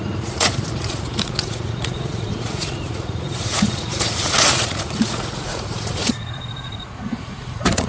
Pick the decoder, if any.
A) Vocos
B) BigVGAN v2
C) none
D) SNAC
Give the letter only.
A